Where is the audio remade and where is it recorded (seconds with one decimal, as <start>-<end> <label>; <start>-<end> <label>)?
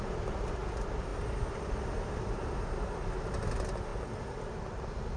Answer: 0.0-1.1 recorded; 1.1-2.5 remade; 2.5-5.2 recorded